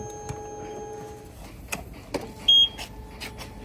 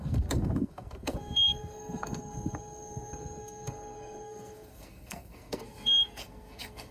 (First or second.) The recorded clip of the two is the first